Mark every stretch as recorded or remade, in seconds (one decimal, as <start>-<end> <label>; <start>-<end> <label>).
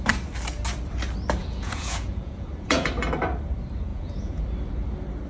0.0-1.4 recorded; 1.4-2.9 remade; 2.9-3.9 recorded; 3.9-4.4 remade; 4.4-5.3 recorded